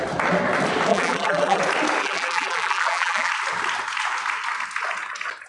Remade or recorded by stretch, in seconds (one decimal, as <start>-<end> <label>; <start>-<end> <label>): 0.0-0.9 recorded; 0.9-1.6 remade; 1.6-2.0 recorded; 2.0-3.3 remade; 3.3-5.5 recorded